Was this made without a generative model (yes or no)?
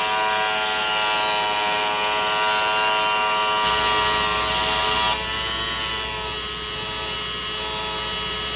yes